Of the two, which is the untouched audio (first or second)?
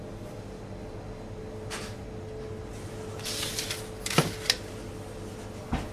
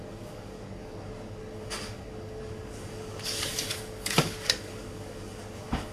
first